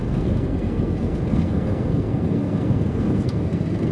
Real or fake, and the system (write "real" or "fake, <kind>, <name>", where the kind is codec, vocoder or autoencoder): fake, codec, SNAC